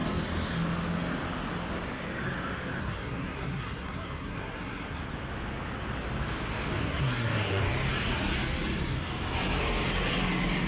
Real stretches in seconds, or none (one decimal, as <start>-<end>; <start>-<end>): 0.0-2.8; 5.0-6.8; 7.6-10.7